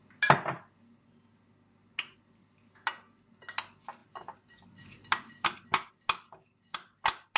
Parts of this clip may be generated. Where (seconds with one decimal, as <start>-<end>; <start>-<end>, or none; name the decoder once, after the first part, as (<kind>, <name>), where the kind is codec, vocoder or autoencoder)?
none